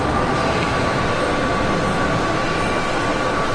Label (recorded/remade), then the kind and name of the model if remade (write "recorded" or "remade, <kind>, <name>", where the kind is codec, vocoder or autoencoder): recorded